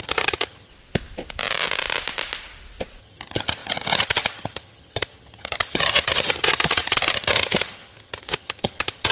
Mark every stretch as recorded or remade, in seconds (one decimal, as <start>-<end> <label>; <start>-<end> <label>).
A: 0.0-0.7 remade; 0.7-3.0 recorded; 3.0-9.1 remade

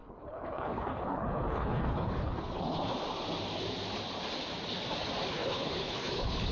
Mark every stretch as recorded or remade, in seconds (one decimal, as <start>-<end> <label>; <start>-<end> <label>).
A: 0.0-2.9 remade; 2.9-5.3 recorded; 5.3-6.5 remade

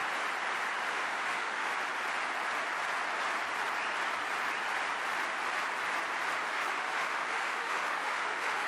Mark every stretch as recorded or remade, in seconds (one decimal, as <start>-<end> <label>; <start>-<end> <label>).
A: 0.0-0.9 recorded; 0.9-1.7 remade; 1.7-6.3 recorded; 6.3-8.7 remade

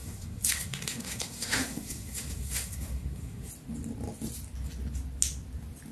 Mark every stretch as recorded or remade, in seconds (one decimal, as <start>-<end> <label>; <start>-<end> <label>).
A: 0.0-3.5 remade; 3.5-5.9 recorded